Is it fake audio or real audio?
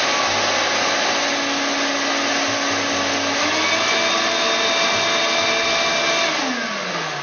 real